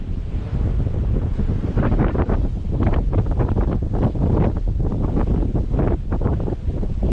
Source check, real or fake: real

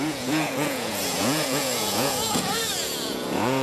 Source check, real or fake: fake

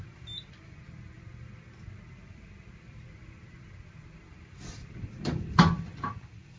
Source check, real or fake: fake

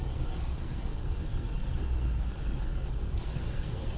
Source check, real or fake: fake